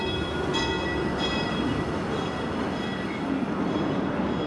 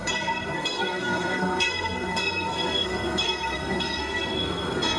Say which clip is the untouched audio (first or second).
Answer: first